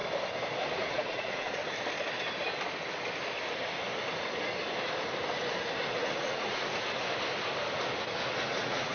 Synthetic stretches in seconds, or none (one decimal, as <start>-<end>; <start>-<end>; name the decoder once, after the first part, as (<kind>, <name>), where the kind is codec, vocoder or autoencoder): 0.9-1.6 (vocoder, Vocos); 5.9-6.7; 8.4-8.9